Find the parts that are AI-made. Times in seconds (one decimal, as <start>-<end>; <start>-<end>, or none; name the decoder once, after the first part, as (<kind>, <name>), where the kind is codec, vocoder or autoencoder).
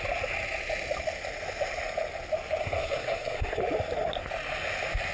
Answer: 2.6-3.6 (codec, SNAC)